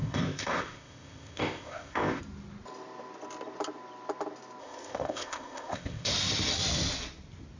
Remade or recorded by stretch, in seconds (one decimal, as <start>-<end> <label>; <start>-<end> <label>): 0.0-2.2 remade; 2.2-4.6 recorded; 4.6-6.1 remade; 6.1-7.6 recorded